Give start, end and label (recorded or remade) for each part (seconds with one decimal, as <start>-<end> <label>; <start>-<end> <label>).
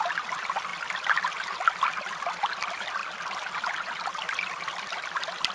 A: 0.0-5.5 recorded